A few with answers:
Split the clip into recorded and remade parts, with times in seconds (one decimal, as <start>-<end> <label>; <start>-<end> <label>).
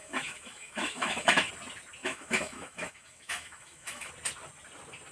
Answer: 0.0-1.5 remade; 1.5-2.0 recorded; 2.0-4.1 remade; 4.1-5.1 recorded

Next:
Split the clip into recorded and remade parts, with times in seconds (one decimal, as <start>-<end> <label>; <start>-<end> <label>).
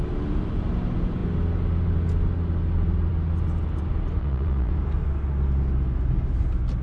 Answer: 0.0-4.2 recorded; 4.2-4.7 remade; 4.7-6.8 recorded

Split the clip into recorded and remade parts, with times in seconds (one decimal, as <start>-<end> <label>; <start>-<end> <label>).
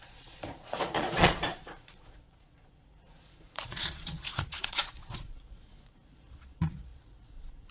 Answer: 0.0-7.7 remade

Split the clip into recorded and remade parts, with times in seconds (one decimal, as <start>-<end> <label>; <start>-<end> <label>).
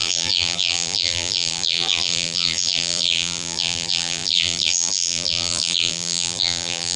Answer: 0.0-7.0 remade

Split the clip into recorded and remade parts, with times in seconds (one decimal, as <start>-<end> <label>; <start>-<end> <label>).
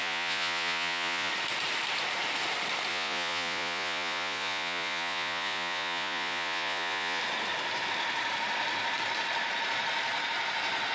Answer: 0.0-1.3 remade; 1.3-2.9 recorded; 2.9-7.2 remade; 7.2-10.9 recorded